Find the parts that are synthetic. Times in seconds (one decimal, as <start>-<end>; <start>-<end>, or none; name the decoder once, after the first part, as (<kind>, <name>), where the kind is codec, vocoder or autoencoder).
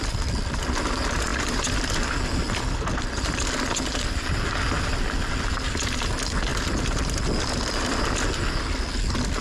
none